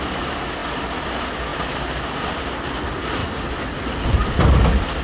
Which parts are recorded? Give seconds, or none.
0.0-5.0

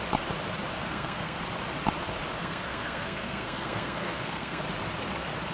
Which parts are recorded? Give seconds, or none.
0.0-0.8; 1.4-2.4; 4.6-5.5

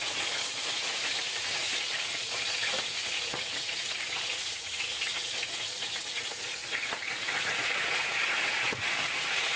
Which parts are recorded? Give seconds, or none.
none

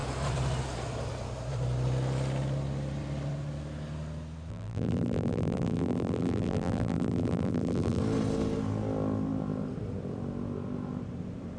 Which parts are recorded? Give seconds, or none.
0.0-4.5; 8.0-11.6

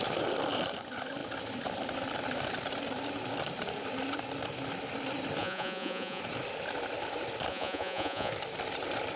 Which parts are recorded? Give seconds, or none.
0.0-5.4; 6.2-7.5; 8.3-9.2

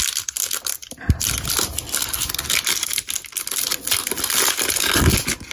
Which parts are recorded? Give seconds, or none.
0.0-5.5

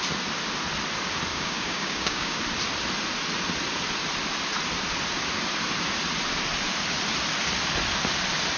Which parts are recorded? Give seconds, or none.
0.0-1.3; 2.4-8.6